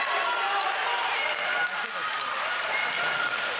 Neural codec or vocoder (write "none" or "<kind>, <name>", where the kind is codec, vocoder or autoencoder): none